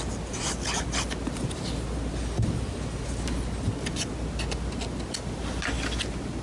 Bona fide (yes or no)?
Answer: yes